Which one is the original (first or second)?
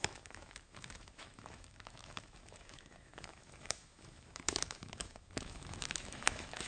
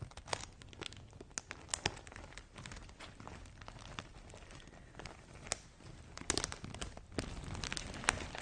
second